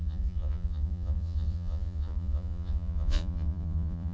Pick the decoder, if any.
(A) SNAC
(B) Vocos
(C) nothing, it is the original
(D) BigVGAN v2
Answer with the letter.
B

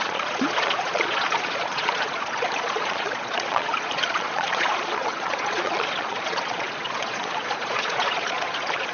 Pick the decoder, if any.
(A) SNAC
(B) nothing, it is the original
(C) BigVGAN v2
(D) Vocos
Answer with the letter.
D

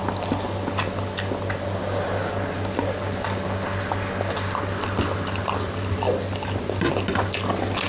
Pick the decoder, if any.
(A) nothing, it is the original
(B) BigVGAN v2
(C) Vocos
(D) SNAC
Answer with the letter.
A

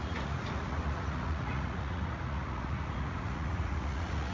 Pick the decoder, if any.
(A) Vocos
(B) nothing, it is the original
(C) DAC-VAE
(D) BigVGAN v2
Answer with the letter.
A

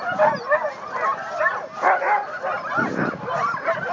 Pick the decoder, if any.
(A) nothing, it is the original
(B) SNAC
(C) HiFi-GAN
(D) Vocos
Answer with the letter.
A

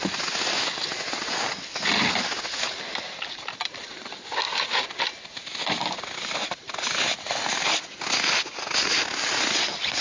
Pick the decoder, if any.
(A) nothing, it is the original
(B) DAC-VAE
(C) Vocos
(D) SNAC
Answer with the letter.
A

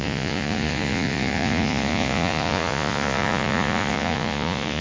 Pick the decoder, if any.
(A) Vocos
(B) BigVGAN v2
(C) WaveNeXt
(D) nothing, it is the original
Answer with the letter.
A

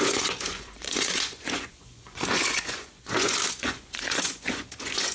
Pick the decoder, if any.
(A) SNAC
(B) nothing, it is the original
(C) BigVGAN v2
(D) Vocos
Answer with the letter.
D